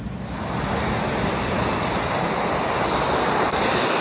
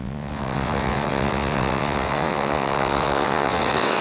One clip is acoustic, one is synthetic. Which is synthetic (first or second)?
second